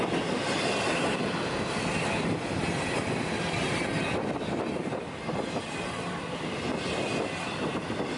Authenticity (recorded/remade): recorded